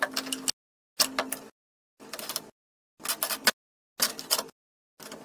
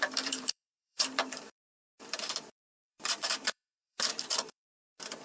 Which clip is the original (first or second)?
first